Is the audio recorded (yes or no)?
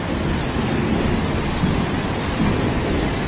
yes